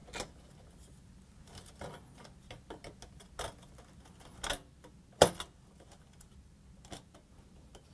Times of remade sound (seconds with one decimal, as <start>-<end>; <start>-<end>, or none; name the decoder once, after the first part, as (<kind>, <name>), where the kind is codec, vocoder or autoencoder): none